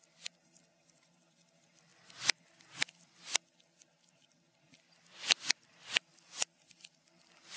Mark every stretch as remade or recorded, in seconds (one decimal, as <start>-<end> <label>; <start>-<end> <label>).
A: 0.0-1.9 remade; 1.9-4.3 recorded; 4.3-7.6 remade